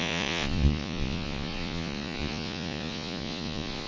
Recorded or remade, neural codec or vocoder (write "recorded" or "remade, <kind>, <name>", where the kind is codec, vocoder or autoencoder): remade, vocoder, Vocos